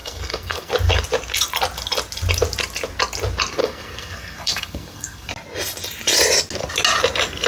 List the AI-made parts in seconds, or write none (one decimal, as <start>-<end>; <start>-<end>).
0.0-0.7; 3.6-5.3